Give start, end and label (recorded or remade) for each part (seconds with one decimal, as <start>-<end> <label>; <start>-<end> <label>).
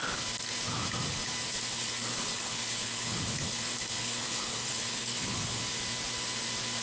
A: 0.0-1.5 recorded; 1.5-5.6 remade; 5.6-6.8 recorded